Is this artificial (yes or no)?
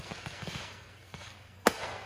yes